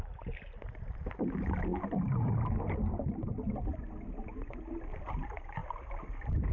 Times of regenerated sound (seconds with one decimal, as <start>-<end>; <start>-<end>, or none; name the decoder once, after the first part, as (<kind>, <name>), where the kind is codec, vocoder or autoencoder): 5.6-6.5 (vocoder, BigVGAN v2)